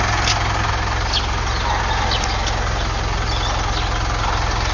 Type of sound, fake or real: real